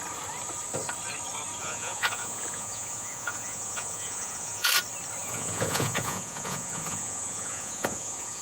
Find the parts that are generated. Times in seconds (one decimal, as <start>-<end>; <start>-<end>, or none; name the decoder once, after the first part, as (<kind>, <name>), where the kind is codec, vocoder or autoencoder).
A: 1.6-4.7 (vocoder, Vocos); 5.2-8.4